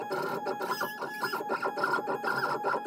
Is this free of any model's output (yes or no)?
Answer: yes